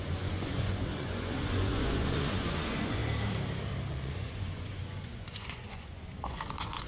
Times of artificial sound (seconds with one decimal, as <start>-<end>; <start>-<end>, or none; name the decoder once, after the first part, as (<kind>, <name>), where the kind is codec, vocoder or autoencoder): 0.0-3.0 (vocoder, Vocos); 3.9-6.9